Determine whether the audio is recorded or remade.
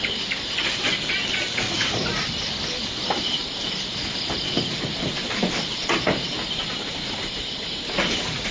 recorded